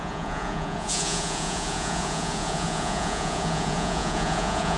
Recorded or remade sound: remade